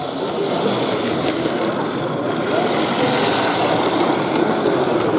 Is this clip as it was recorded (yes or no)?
yes